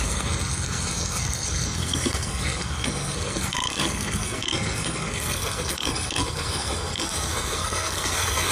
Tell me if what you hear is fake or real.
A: fake